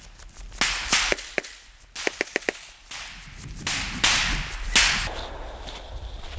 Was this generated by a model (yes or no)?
no